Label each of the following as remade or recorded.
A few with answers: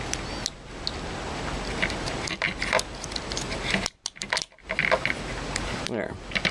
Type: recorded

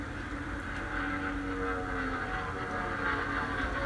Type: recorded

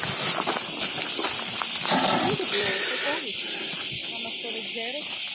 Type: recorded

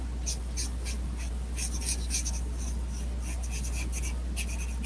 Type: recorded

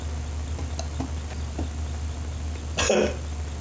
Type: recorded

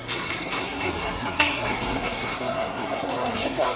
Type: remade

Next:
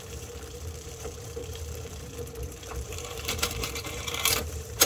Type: remade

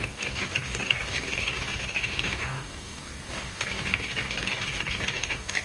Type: remade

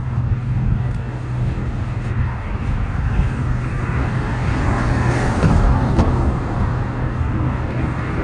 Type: remade